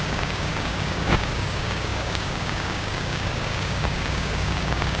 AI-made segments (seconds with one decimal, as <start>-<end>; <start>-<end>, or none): 0.0-5.0